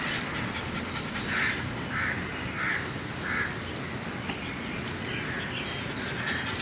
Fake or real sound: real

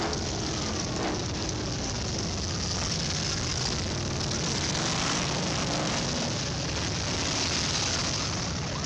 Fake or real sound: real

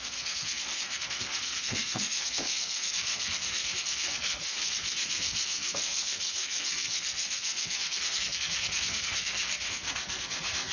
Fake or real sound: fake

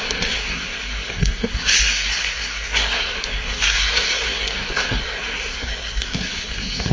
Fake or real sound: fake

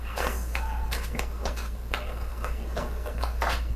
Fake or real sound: fake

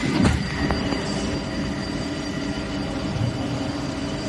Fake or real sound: real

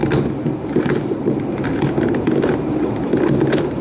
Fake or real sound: real